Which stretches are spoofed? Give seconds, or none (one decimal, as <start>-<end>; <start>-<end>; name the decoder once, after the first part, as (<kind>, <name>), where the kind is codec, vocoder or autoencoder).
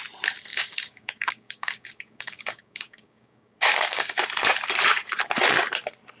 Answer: 0.5-4.2 (codec, DAC)